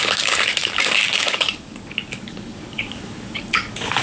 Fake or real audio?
fake